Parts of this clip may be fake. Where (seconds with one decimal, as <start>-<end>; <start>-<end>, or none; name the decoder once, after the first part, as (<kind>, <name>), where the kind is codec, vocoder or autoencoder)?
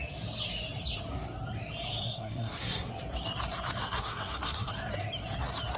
2.0-2.9 (codec, SNAC); 3.8-4.7